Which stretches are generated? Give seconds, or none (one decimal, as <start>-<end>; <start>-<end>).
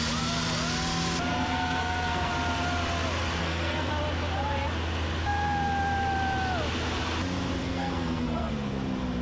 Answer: 1.3-2.3; 3.4-3.9; 7.6-8.5